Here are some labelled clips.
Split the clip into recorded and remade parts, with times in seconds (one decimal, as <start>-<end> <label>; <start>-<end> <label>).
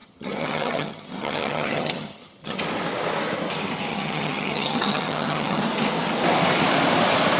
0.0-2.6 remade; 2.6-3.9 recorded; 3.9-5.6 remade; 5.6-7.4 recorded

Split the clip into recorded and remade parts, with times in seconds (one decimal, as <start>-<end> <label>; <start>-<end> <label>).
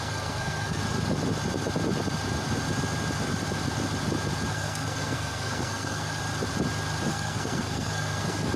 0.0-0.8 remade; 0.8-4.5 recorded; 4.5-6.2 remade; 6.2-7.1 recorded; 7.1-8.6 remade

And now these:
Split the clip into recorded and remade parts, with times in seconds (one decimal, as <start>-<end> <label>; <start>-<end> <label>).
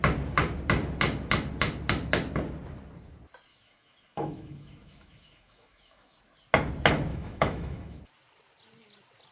0.0-3.5 recorded; 3.5-6.2 remade; 6.2-7.1 recorded; 7.1-8.0 remade; 8.0-9.3 recorded